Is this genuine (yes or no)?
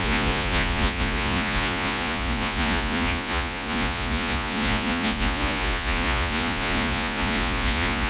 no